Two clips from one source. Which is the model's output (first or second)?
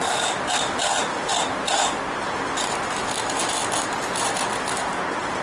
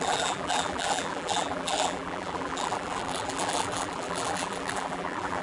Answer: second